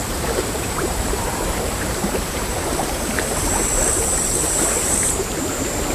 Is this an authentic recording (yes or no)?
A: no